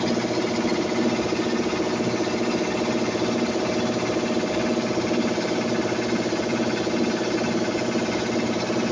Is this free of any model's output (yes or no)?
yes